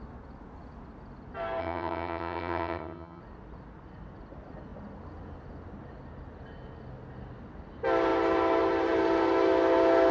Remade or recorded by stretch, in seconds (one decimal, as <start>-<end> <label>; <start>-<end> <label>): 0.0-1.6 recorded; 1.6-3.2 remade; 3.2-10.1 recorded